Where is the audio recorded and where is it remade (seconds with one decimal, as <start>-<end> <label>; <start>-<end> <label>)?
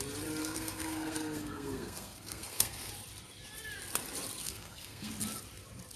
0.0-0.4 recorded; 0.4-2.9 remade; 2.9-4.4 recorded; 4.4-5.1 remade; 5.1-6.0 recorded